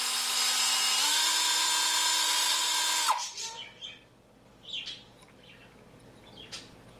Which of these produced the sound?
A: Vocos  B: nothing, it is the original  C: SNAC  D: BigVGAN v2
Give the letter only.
B